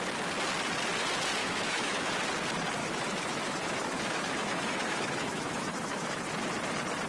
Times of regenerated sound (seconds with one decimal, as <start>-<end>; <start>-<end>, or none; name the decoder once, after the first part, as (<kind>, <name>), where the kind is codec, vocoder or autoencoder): 1.4-2.1 (autoencoder, DAC-VAE); 2.8-6.2